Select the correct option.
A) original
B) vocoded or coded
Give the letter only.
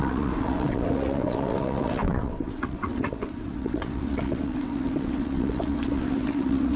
B